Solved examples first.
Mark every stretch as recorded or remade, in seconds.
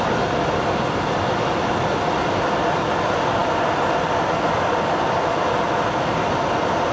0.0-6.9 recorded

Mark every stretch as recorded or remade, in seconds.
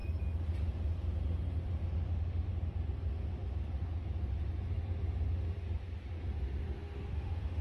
0.0-2.1 recorded; 2.1-2.5 remade; 2.5-7.1 recorded; 7.1-7.6 remade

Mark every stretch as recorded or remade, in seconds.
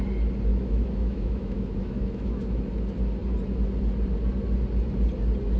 0.0-0.5 recorded; 0.5-2.6 remade; 2.6-5.6 recorded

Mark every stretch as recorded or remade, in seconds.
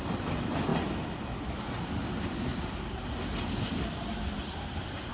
0.0-5.1 recorded